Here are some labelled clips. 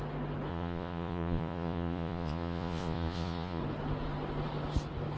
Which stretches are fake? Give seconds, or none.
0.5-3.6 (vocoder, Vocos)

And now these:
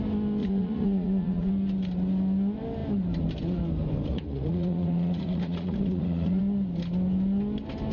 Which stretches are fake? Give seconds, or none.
0.4-1.5 (vocoder, Vocos); 4.1-6.4